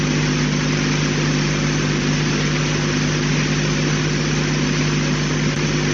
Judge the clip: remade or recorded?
recorded